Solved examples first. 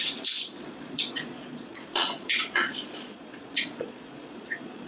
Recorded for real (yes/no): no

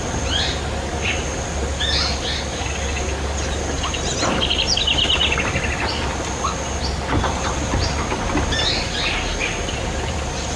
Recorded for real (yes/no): yes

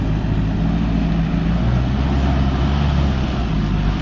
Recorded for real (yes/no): yes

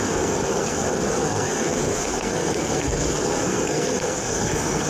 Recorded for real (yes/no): no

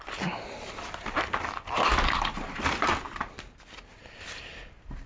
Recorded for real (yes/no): yes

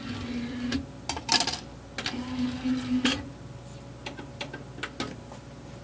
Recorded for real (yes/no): yes